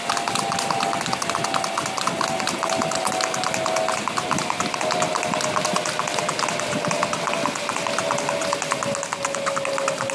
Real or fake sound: real